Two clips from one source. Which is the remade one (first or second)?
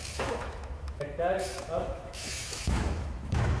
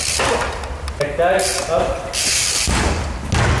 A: first